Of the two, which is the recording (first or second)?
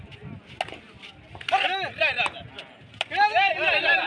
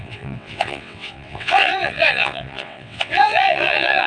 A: first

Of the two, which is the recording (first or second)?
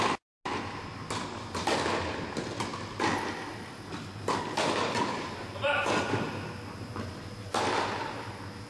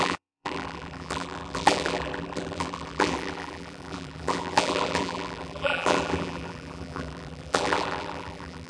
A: first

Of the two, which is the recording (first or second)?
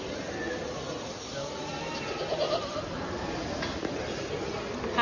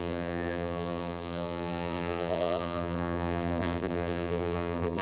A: first